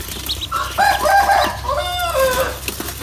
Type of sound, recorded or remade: recorded